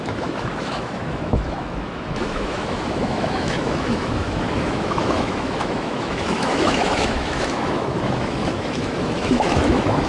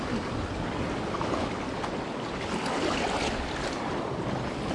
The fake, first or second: first